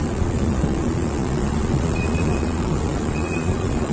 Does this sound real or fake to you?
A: fake